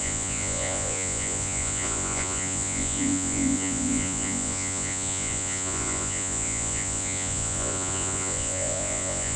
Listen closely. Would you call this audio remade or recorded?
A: remade